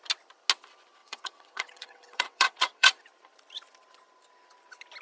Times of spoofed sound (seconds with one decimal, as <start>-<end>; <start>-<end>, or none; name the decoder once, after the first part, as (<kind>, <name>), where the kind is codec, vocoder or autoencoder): 1.0-3.0 (vocoder, WaveNeXt)